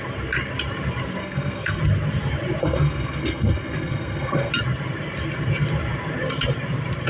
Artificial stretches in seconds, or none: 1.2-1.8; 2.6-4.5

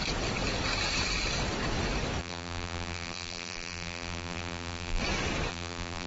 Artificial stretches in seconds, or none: 2.2-5.0; 5.5-6.1

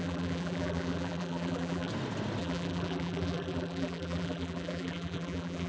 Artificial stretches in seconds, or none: 0.0-1.9; 2.4-5.7